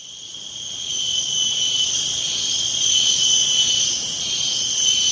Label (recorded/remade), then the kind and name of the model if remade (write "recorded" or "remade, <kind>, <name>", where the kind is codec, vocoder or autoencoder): remade, vocoder, Vocos